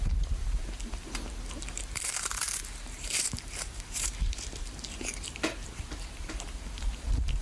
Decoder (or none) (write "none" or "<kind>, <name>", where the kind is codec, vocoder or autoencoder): vocoder, BigVGAN v2